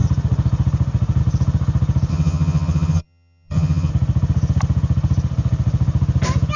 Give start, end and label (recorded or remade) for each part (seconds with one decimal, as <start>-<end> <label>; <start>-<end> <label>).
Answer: 0.0-2.1 recorded; 2.1-3.9 remade; 3.9-6.6 recorded